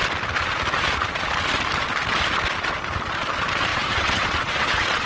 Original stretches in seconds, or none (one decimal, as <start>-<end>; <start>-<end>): 0.0-3.7